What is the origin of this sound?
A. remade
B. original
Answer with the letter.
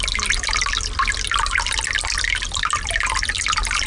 B